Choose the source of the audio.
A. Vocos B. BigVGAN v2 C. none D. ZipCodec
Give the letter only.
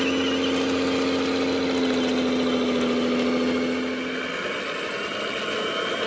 C